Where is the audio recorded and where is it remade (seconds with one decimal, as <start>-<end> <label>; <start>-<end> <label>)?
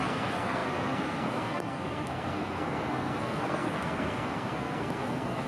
0.0-5.5 remade